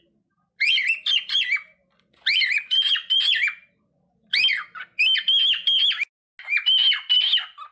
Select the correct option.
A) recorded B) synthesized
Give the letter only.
A